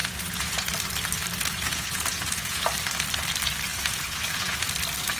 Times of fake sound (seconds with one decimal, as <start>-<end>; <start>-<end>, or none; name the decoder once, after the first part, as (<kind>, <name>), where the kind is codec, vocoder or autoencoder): 0.0-0.7 (vocoder, Vocos); 1.4-2.6; 3.7-4.7